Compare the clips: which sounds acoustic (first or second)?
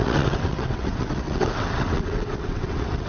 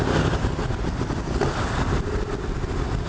second